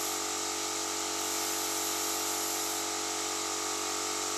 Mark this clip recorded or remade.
recorded